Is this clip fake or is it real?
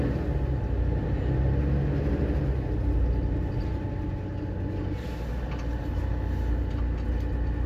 real